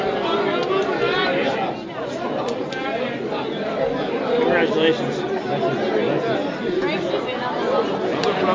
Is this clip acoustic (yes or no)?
yes